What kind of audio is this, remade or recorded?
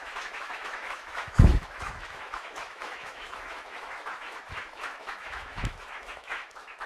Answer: remade